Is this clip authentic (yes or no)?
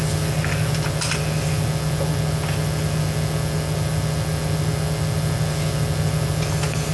yes